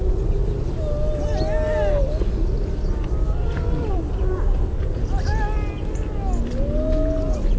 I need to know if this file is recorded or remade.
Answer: recorded